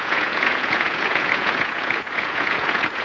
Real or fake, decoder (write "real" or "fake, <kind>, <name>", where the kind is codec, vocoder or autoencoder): fake, vocoder, Vocos